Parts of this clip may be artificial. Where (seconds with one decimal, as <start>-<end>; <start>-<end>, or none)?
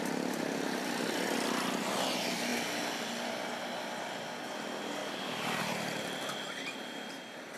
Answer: 5.0-5.6